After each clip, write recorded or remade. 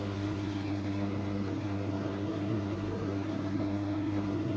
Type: remade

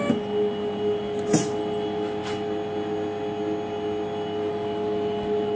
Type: recorded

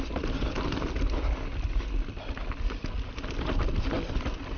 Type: recorded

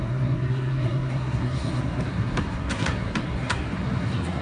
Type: remade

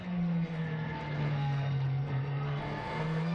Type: remade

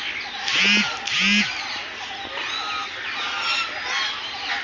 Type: recorded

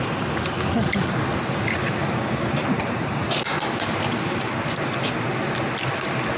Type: recorded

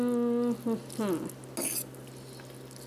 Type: recorded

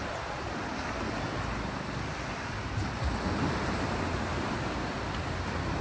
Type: recorded